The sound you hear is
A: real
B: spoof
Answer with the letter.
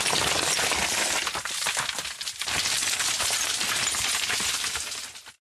A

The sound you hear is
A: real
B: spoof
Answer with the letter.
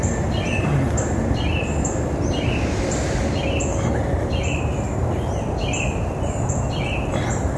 B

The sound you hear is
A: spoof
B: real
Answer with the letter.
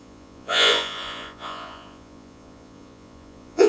A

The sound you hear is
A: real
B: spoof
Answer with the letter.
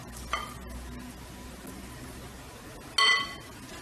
A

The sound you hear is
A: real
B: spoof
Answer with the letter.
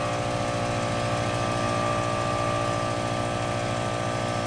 A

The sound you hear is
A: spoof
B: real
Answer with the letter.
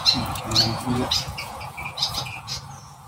A